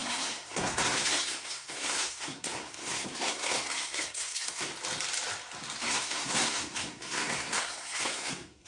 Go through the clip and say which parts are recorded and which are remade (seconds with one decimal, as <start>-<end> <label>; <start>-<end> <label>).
0.0-4.7 remade; 4.7-5.8 recorded; 5.8-8.7 remade

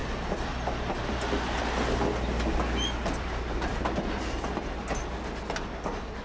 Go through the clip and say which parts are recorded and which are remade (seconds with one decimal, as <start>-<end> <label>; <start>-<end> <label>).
0.0-6.2 recorded